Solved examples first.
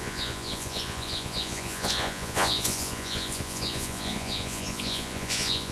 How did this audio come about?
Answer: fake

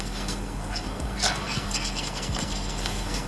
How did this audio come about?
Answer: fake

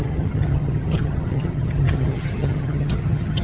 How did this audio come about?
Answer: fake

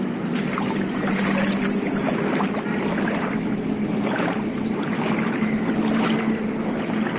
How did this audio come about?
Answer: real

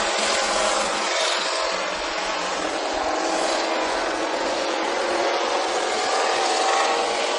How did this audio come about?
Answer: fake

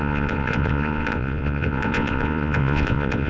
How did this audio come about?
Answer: fake